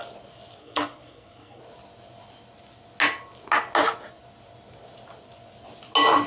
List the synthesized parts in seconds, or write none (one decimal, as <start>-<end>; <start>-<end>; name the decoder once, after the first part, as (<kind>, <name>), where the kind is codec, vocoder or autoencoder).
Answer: 0.6-1.6 (codec, SNAC)